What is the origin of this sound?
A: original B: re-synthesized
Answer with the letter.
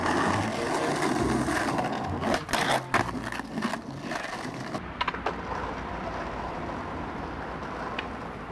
A